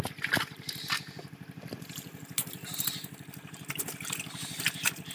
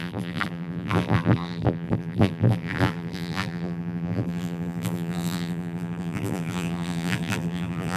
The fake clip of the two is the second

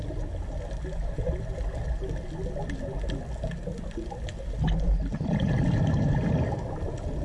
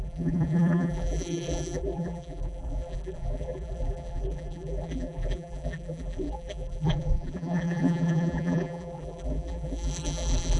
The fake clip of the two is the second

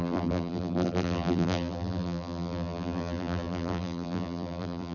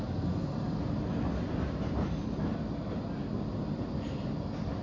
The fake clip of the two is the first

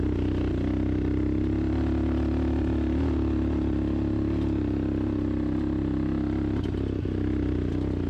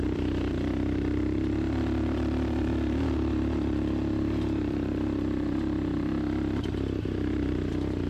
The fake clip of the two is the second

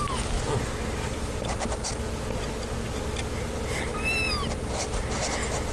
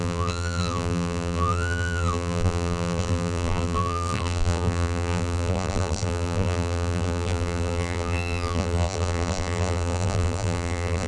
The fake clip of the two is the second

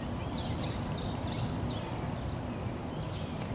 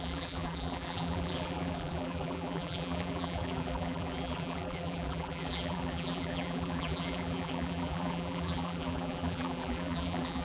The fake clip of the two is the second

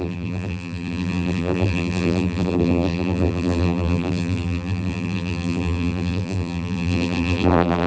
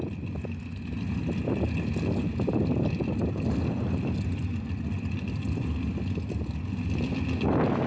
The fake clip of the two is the first